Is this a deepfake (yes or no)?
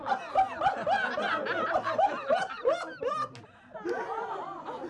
no